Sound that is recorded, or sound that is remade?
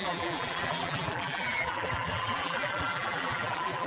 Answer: remade